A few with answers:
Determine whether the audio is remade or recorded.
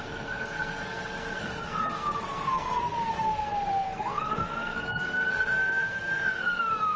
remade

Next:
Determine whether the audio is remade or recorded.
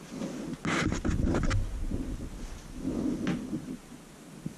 recorded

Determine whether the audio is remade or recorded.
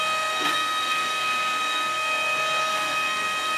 remade